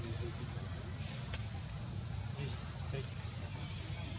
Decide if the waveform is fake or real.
real